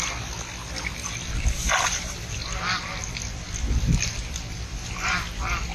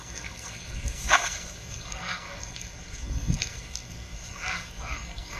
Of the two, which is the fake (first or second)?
second